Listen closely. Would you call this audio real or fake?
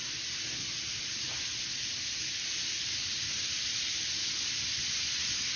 real